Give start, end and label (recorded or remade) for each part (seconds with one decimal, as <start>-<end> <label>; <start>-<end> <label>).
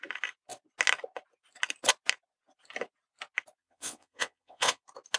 0.0-3.6 recorded; 3.6-4.8 remade; 4.8-5.2 recorded